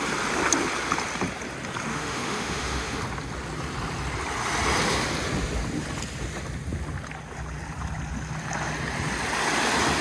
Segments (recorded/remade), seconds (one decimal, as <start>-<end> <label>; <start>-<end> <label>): 0.0-1.9 recorded; 1.9-3.0 remade; 3.0-10.0 recorded